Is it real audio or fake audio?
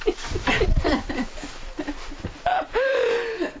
fake